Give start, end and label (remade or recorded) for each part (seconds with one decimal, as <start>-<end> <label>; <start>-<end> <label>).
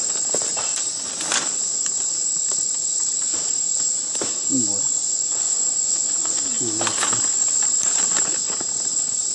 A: 0.0-5.0 recorded; 5.0-6.4 remade; 6.4-9.3 recorded